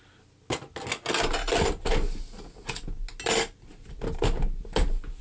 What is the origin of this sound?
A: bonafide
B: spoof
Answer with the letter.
A